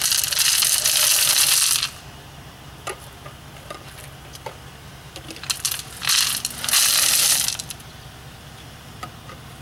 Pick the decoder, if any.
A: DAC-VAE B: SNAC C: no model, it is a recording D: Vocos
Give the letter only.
C